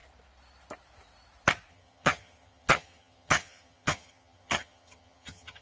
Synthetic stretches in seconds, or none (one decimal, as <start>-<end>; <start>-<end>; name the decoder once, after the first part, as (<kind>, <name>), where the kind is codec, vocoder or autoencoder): 1.7-5.6 (vocoder, HiFi-GAN)